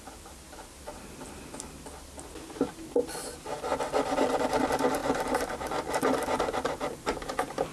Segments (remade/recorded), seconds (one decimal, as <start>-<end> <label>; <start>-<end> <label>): 0.0-7.7 recorded